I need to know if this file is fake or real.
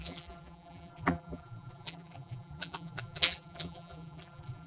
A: fake